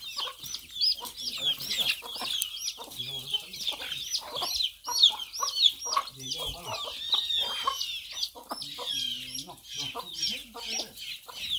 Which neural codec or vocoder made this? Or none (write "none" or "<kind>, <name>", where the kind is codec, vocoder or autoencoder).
none